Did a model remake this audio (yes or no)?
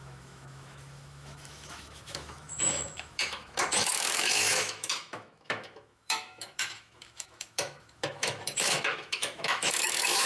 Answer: yes